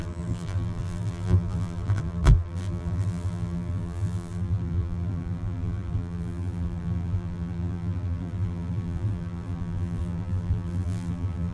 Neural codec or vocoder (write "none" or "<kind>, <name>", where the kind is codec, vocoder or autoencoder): vocoder, BigVGAN v2